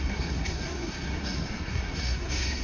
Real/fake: fake